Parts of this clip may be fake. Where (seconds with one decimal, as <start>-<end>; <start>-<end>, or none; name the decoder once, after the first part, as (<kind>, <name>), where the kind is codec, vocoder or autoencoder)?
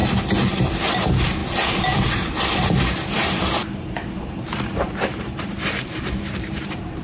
0.9-1.4 (vocoder, BigVGAN v2); 2.1-7.0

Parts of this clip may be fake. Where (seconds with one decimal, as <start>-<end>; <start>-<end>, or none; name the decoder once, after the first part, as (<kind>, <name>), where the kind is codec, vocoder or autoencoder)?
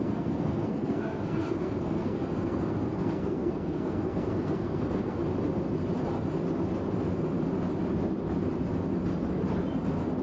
0.0-5.2 (codec, SNAC)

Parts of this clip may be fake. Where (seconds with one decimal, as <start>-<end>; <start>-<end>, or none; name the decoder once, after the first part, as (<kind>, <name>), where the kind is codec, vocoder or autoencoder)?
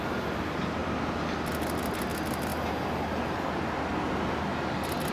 none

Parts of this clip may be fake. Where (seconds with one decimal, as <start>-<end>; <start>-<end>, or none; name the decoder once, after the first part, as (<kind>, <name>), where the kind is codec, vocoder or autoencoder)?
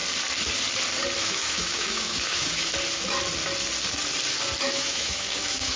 1.2-2.7 (autoencoder, DAC-VAE); 4.6-5.8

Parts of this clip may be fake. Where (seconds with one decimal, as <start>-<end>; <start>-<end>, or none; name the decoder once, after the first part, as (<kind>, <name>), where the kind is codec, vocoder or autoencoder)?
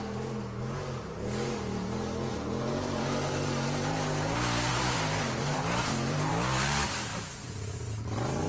2.3-3.5 (vocoder, BigVGAN v2); 4.7-6.3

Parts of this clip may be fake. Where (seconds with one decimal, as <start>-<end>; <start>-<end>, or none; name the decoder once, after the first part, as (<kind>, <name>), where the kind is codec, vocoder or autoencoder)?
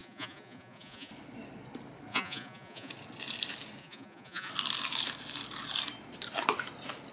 0.0-1.1 (vocoder, Vocos); 2.1-2.9; 3.8-4.5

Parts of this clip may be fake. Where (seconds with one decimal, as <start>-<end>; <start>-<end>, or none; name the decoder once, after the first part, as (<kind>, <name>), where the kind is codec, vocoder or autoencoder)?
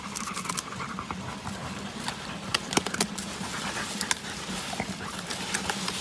none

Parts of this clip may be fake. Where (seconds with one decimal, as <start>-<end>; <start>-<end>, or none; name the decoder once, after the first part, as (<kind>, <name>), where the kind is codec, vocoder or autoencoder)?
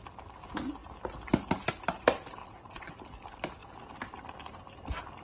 2.4-2.9 (vocoder, Vocos)